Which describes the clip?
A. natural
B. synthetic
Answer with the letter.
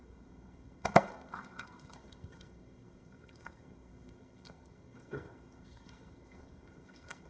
B